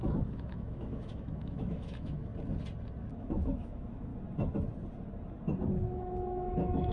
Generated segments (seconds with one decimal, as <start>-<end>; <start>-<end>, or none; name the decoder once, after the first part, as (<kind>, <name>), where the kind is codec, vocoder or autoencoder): 0.0-2.3 (autoencoder, DAC-VAE); 3.1-4.1; 5.6-6.9